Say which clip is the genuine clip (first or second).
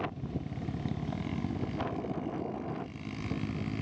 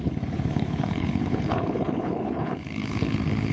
first